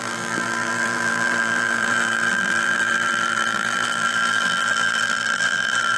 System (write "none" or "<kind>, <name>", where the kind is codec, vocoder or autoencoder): vocoder, BigVGAN v2